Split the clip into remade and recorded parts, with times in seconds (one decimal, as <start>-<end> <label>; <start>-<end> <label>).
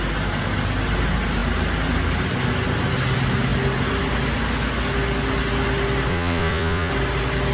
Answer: 0.0-6.1 recorded; 6.1-6.9 remade; 6.9-7.5 recorded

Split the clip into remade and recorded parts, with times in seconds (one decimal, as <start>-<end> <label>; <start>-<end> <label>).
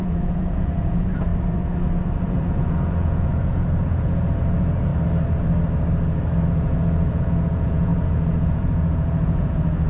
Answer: 0.0-1.3 remade; 1.3-2.2 recorded; 2.2-4.9 remade; 4.9-6.4 recorded; 6.4-9.9 remade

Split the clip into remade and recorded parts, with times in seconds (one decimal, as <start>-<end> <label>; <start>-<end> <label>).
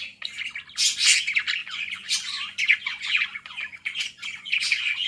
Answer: 0.0-1.6 recorded; 1.6-5.1 remade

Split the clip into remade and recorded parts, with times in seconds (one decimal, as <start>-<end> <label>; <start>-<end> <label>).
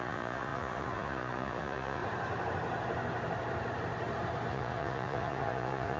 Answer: 0.0-2.0 remade; 2.0-4.5 recorded; 4.5-6.0 remade